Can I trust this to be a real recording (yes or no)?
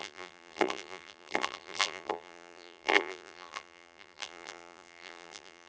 no